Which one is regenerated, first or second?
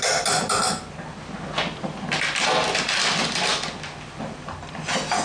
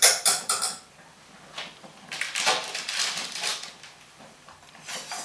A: second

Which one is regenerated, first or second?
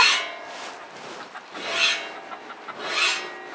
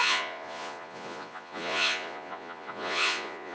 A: second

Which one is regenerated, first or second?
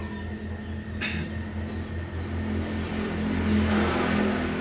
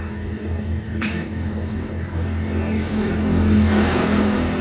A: second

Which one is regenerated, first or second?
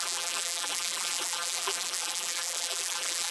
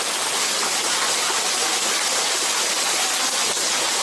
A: first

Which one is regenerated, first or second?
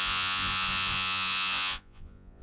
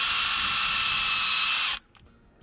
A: first